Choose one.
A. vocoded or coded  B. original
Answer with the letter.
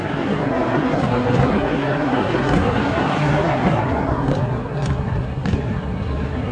A